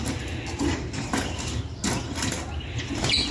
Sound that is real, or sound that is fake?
real